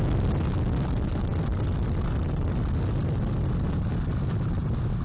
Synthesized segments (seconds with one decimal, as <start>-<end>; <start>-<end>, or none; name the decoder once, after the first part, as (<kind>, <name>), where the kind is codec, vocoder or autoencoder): none